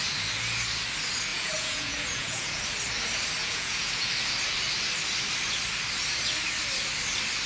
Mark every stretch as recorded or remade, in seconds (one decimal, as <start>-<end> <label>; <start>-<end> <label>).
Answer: 0.0-1.3 recorded; 1.3-2.6 remade; 2.6-3.4 recorded; 3.4-4.1 remade; 4.1-7.5 recorded